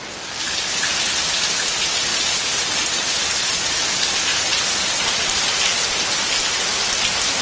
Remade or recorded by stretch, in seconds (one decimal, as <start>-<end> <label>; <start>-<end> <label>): 0.0-7.4 recorded